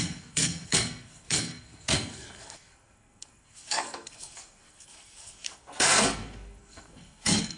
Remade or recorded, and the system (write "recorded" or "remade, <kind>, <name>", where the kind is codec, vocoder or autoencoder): remade, codec, SNAC